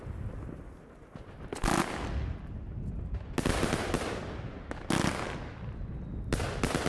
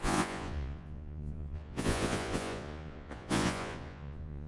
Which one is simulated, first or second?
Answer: second